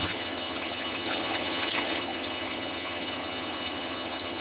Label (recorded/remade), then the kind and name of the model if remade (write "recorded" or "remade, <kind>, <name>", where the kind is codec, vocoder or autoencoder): remade, vocoder, HiFi-GAN